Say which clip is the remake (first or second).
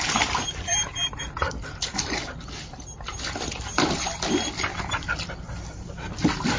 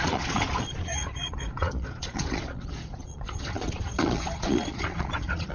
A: second